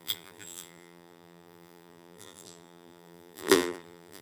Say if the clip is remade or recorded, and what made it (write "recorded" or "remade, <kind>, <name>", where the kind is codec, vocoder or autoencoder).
remade, vocoder, BigVGAN v2